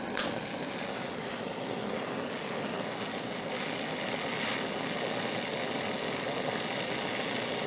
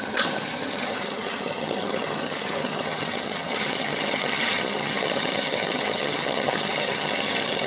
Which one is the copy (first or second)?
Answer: second